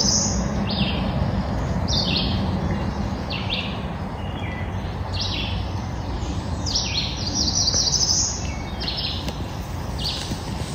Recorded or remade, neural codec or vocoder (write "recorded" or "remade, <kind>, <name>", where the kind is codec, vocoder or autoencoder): recorded